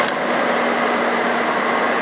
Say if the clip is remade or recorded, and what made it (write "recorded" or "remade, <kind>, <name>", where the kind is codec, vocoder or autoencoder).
remade, vocoder, BigVGAN v2